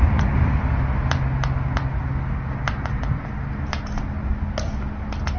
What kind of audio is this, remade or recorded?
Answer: recorded